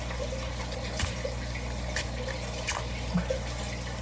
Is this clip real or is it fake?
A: real